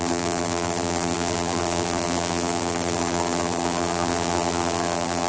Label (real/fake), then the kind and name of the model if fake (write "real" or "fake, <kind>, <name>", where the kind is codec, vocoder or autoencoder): fake, vocoder, BigVGAN v2